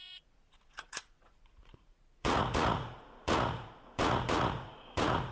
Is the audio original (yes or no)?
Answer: no